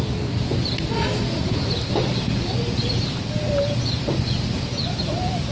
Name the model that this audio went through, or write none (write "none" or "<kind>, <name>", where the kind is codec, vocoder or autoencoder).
none